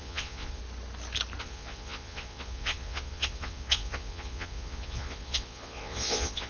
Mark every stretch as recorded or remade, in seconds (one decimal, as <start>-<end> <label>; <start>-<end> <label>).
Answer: 0.0-0.6 remade; 0.6-1.4 recorded; 1.4-6.5 remade